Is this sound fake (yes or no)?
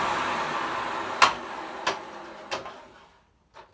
no